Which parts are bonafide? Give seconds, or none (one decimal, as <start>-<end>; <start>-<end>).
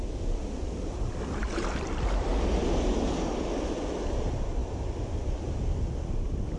0.0-6.6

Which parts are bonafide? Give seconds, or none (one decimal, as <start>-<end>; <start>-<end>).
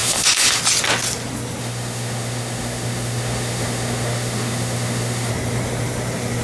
0.6-1.6; 5.3-6.4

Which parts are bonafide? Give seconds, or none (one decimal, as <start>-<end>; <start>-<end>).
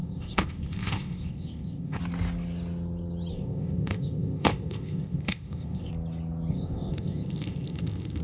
2.0-3.3; 5.9-6.5